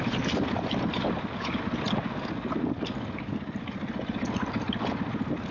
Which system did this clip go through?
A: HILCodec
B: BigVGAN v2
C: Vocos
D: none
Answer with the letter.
D